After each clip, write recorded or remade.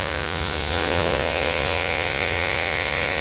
remade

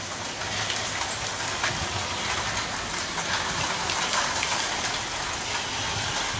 recorded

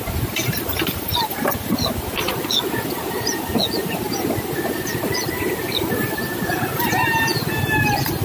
recorded